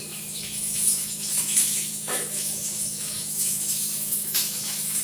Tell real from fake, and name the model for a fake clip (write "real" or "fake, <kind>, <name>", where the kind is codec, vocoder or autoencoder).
fake, autoencoder, DAC-VAE